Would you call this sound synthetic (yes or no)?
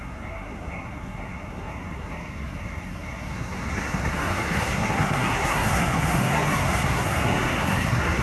yes